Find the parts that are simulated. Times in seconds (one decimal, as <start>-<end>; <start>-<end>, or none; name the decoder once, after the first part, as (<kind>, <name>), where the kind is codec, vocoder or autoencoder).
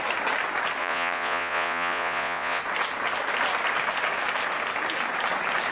0.8-2.6 (vocoder, Vocos)